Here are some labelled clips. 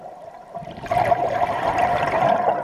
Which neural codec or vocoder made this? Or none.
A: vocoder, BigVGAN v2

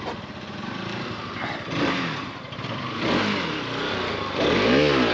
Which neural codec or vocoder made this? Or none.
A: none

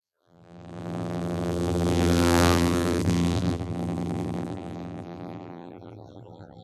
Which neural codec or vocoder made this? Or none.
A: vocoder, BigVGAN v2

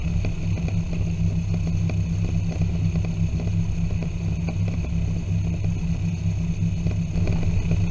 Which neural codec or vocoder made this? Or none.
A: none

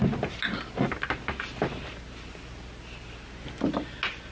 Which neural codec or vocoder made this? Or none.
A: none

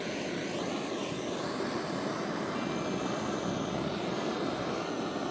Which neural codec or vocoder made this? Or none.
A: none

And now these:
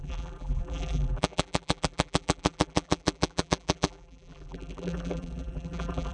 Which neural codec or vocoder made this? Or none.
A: vocoder, BigVGAN v2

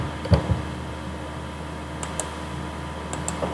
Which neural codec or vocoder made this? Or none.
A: none